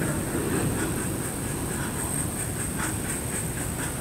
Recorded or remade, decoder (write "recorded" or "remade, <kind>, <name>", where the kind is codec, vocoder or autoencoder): recorded